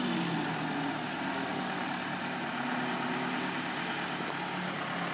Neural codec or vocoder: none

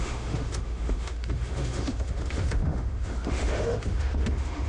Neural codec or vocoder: autoencoder, DAC-VAE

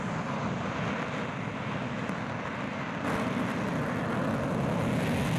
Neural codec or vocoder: none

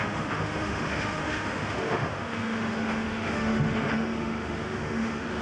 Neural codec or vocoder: autoencoder, DAC-VAE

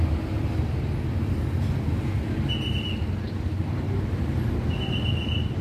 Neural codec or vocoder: none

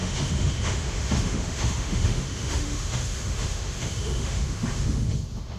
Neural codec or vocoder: autoencoder, DAC-VAE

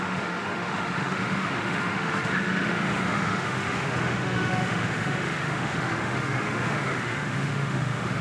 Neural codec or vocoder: autoencoder, DAC-VAE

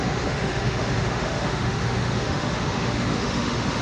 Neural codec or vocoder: autoencoder, DAC-VAE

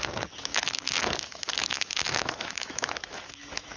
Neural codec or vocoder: autoencoder, DAC-VAE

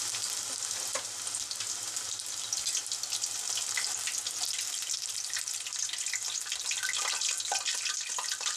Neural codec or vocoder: none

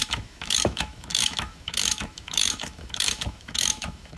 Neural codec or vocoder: autoencoder, DAC-VAE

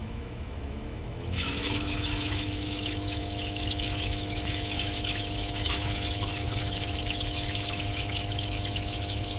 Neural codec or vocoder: autoencoder, DAC-VAE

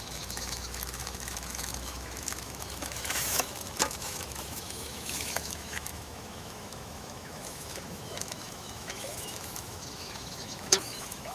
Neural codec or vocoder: autoencoder, DAC-VAE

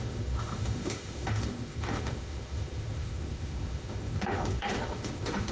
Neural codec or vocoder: autoencoder, DAC-VAE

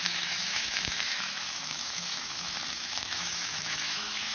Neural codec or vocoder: autoencoder, DAC-VAE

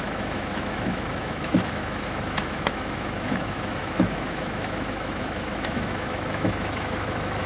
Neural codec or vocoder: autoencoder, DAC-VAE